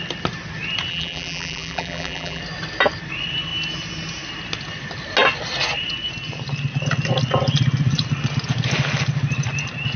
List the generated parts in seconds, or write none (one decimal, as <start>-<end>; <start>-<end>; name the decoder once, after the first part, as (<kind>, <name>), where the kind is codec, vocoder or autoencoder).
0.9-2.4 (vocoder, BigVGAN v2)